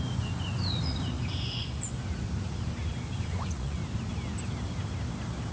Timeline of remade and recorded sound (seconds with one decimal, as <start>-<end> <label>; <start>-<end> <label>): 0.0-2.0 remade; 2.0-2.9 recorded; 2.9-3.8 remade; 3.8-5.5 recorded